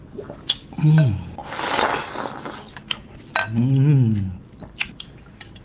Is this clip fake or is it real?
real